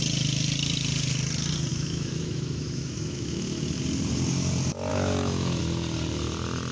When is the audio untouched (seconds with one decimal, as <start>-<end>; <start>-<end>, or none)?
0.0-1.7; 3.8-4.9; 5.6-6.7